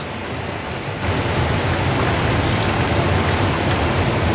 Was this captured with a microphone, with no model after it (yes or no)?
yes